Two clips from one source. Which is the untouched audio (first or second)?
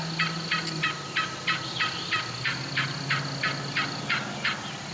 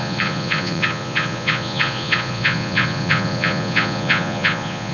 first